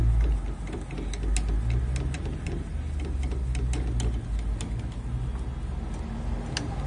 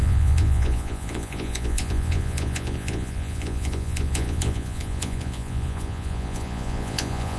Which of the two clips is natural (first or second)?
first